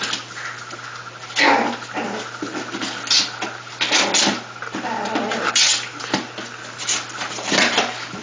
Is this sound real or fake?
real